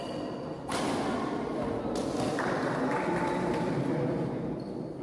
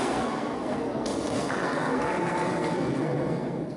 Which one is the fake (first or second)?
second